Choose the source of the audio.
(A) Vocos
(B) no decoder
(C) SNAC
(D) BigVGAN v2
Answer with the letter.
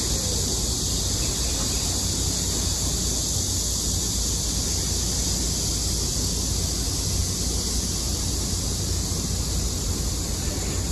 B